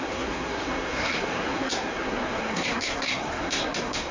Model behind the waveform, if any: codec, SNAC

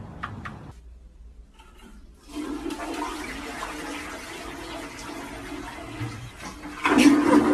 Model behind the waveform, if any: none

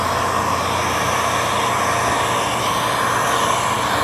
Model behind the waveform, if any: none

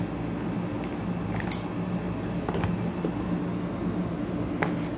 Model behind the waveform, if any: none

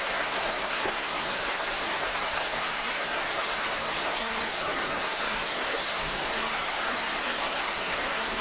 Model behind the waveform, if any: codec, SNAC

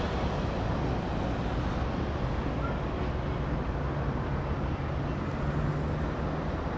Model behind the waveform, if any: none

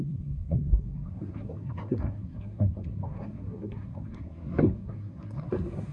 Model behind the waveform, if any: codec, SNAC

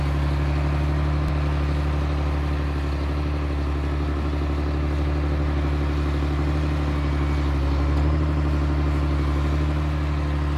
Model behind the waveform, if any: none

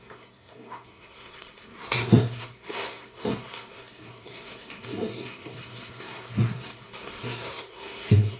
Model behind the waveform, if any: codec, SNAC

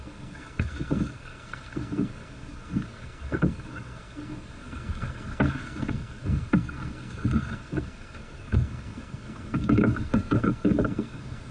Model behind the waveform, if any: codec, SNAC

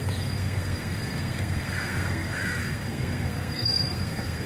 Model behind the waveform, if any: codec, SNAC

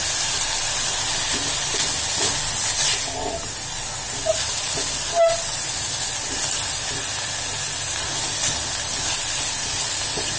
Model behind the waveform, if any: none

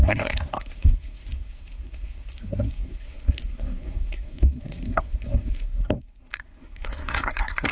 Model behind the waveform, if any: codec, SNAC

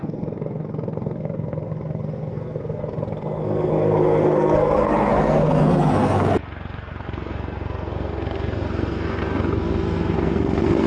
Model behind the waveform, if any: codec, SNAC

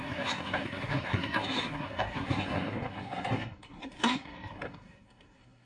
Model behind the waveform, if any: codec, SNAC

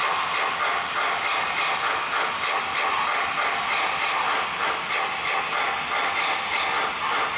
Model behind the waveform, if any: none